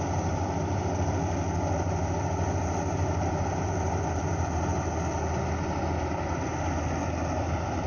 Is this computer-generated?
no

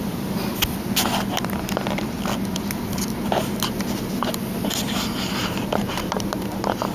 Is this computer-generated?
no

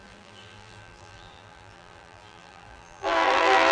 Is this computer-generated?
yes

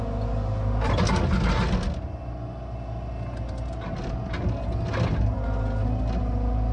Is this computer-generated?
no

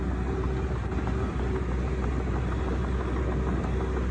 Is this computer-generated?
no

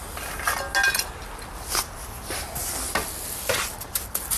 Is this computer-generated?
no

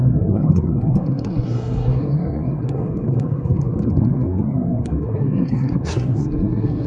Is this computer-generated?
yes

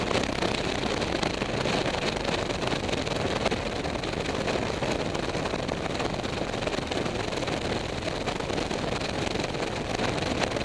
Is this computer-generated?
no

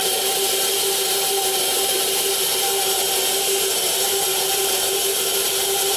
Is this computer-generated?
yes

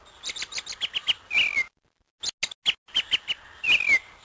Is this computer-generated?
no